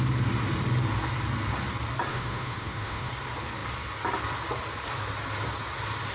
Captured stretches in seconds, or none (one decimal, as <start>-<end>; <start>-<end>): 0.0-2.1; 3.1-6.1